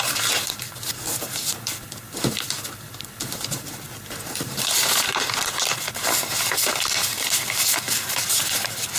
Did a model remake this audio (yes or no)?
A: no